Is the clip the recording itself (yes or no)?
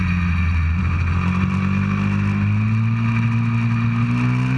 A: yes